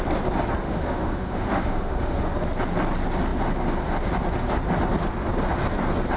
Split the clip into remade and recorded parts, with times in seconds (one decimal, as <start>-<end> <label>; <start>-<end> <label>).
0.0-0.6 recorded; 0.6-2.3 remade; 2.3-6.2 recorded